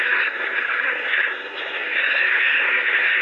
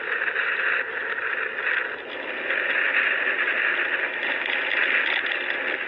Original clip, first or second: second